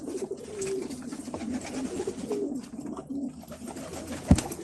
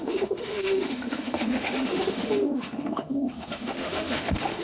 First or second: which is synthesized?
second